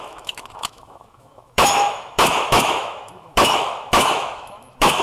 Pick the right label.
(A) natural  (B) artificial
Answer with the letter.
B